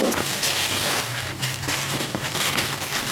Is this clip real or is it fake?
fake